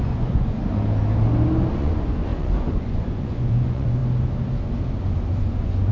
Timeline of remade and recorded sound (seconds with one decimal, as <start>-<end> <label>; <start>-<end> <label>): 0.0-0.6 remade; 0.6-1.7 recorded; 1.7-4.0 remade; 4.0-5.4 recorded; 5.4-5.9 remade